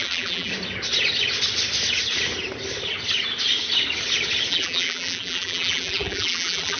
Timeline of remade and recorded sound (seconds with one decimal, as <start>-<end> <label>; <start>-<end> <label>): 0.0-0.5 remade; 0.5-4.5 recorded; 4.5-6.8 remade